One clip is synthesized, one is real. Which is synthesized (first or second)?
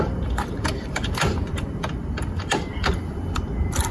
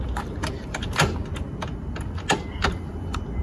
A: first